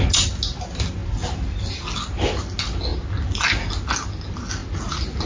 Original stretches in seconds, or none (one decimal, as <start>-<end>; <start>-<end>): 0.0-5.3